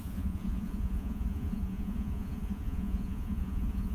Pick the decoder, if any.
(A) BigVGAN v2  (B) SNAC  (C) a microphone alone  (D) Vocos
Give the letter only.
D